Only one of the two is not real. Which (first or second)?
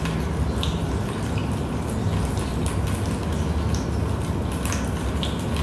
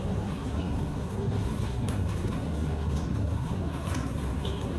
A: second